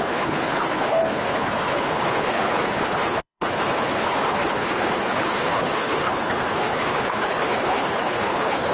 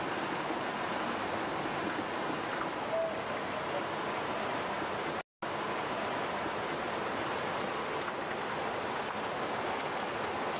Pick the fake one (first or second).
first